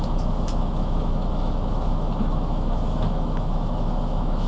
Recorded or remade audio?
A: remade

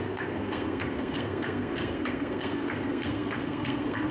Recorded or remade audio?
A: remade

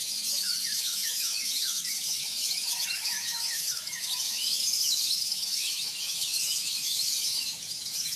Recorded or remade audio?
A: remade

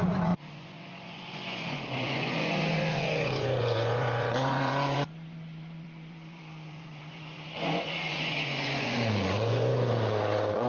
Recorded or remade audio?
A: remade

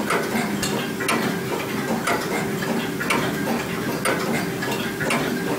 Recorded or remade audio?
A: recorded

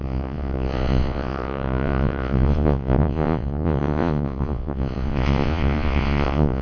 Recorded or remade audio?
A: remade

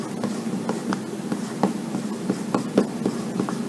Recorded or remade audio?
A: recorded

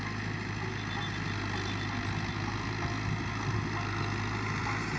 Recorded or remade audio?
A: recorded